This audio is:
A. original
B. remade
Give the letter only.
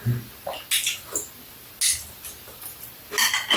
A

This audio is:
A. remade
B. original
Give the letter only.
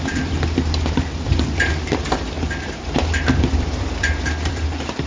A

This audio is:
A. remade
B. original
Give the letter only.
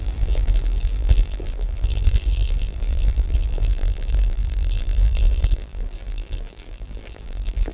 A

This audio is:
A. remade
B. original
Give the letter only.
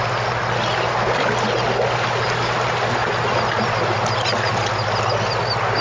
B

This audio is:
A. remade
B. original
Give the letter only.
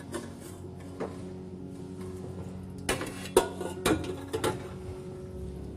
B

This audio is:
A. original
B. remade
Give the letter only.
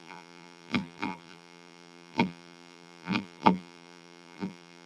B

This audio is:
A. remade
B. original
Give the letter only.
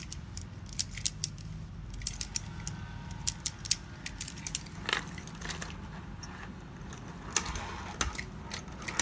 B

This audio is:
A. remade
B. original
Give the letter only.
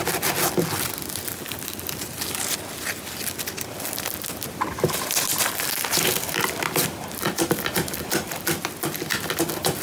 B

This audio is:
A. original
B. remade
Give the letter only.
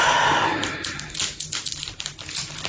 B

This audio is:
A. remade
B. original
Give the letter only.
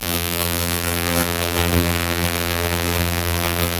A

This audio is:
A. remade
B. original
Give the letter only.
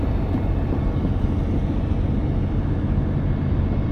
B